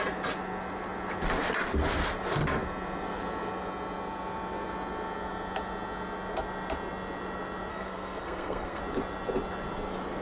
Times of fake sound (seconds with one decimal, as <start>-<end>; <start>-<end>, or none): 7.7-8.8